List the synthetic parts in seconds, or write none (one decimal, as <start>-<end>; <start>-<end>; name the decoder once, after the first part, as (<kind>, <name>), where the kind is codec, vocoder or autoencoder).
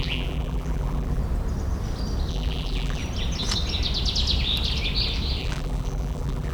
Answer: 0.0-1.2 (vocoder, BigVGAN v2); 2.3-3.0; 5.4-6.5